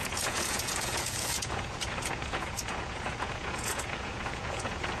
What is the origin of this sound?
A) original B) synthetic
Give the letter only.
B